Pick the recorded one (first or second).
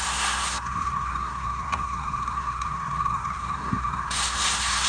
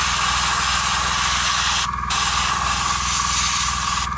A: second